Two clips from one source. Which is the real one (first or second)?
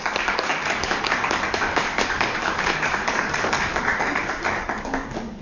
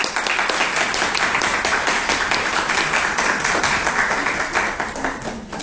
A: second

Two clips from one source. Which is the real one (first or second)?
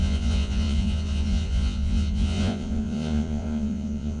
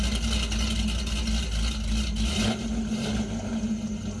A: second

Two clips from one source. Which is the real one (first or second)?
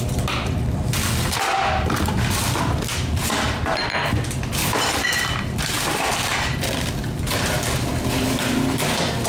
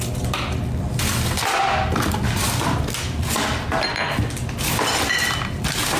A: second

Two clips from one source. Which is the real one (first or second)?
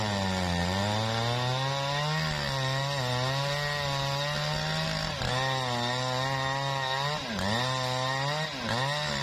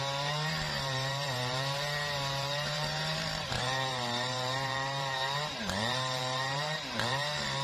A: first